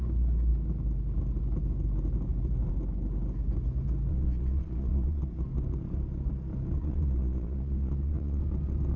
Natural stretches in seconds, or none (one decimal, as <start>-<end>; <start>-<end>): 0.0-4.1; 5.3-6.8; 8.4-9.0